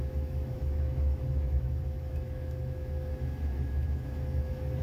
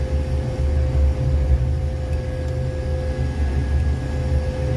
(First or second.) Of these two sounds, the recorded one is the second